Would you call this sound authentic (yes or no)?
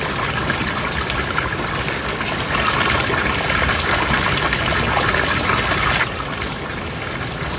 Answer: yes